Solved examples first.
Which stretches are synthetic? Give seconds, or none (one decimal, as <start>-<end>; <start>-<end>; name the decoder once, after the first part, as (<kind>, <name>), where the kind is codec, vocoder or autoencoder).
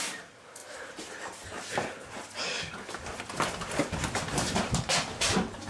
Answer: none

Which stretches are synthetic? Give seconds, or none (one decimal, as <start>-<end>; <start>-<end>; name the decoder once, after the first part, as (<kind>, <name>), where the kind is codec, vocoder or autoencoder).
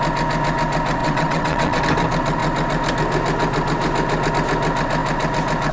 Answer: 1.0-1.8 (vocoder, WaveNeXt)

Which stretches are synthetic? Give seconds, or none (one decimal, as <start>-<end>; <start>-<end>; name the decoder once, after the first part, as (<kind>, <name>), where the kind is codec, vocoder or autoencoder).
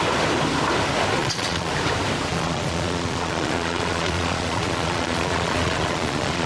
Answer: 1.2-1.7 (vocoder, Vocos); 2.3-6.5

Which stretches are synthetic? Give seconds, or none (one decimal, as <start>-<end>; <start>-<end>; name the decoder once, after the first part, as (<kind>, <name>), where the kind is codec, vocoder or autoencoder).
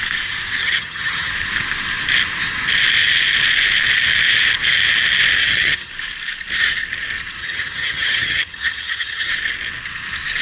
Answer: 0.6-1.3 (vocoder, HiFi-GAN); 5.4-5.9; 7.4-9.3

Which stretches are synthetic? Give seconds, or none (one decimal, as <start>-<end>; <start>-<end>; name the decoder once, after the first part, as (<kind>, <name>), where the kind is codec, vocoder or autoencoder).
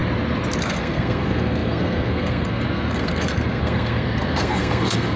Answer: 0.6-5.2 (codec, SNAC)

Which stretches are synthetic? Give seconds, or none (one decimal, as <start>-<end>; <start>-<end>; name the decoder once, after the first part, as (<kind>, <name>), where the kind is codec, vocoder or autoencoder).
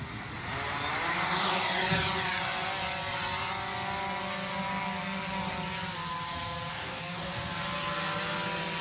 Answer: 6.7-7.4 (codec, DAC)